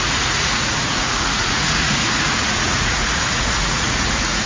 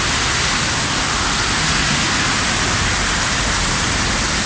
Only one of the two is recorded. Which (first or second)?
second